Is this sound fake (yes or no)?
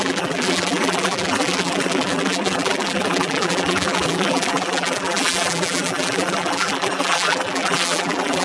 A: yes